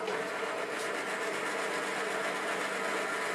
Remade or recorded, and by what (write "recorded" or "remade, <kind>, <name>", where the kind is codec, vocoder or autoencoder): recorded